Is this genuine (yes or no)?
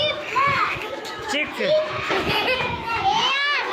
no